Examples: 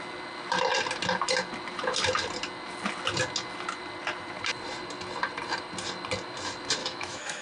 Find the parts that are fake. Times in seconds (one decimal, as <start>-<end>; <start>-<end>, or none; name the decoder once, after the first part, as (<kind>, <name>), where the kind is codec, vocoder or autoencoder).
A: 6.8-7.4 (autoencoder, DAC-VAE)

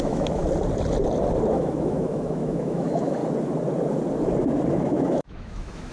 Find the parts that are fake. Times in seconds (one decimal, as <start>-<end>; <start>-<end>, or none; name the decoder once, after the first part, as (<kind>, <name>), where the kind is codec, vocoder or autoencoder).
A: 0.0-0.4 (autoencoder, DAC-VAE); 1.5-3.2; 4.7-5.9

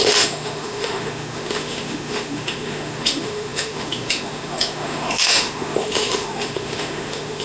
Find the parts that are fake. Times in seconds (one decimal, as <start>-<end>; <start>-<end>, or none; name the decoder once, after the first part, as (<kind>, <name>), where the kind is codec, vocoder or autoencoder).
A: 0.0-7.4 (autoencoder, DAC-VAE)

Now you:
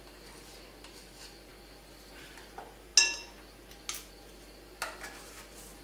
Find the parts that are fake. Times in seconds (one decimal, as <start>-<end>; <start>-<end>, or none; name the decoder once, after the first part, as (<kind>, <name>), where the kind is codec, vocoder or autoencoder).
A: none

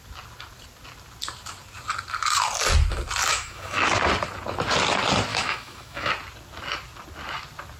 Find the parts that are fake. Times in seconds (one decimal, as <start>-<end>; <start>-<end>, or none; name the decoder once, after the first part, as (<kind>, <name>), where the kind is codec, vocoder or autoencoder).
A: 3.3-3.9 (autoencoder, DAC-VAE); 5.3-6.1

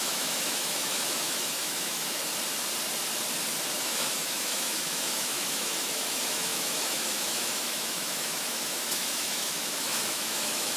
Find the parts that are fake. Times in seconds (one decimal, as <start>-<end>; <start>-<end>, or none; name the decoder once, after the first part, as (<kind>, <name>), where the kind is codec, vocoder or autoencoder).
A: 0.0-2.2 (autoencoder, DAC-VAE); 3.8-10.8

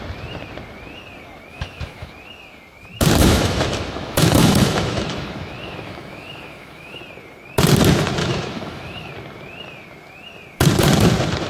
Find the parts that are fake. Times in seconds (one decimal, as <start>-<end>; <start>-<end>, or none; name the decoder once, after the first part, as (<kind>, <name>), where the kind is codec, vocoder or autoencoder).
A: 1.5-2.1 (autoencoder, DAC-VAE); 3.2-7.0; 8.2-9.1

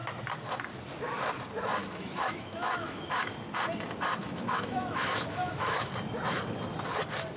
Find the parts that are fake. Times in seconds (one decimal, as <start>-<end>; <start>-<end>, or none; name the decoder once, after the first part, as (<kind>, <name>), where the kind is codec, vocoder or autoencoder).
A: 1.8-3.3 (autoencoder, DAC-VAE); 4.2-5.9